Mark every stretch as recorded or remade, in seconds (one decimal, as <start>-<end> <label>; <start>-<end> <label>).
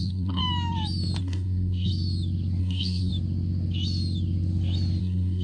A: 0.0-0.4 remade; 0.4-1.2 recorded; 1.2-1.9 remade; 1.9-2.6 recorded; 2.6-3.1 remade; 3.1-5.0 recorded; 5.0-5.4 remade